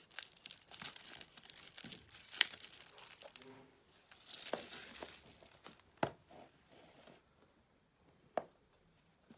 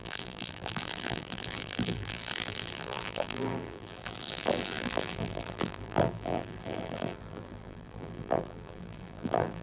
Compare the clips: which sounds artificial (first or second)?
second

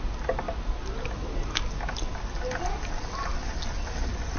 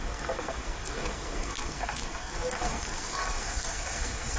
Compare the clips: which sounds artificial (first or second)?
second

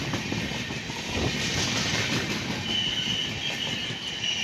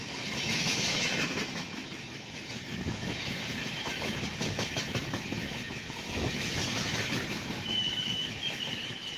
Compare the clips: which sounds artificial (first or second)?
second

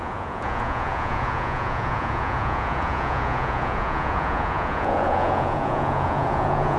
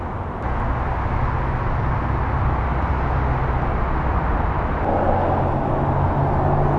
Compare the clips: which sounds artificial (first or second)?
first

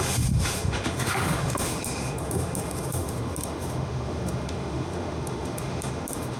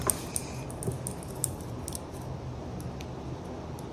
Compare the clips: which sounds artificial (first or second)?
first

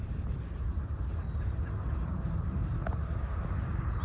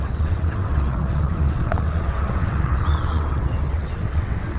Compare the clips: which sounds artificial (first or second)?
second